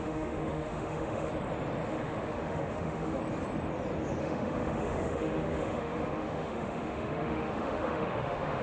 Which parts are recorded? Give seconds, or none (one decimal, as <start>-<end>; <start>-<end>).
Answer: 1.3-1.9; 3.2-4.2